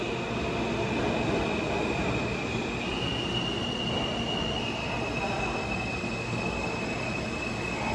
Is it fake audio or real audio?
real